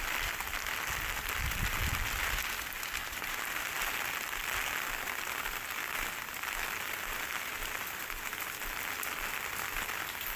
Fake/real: real